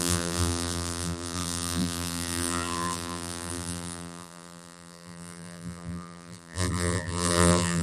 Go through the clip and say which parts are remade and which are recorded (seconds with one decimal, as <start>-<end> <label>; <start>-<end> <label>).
0.0-7.8 remade